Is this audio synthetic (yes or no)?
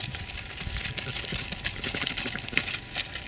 yes